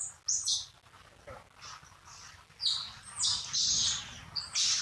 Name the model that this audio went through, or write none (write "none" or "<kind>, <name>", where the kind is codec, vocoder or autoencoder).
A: none